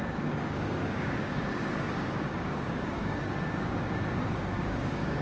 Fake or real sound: fake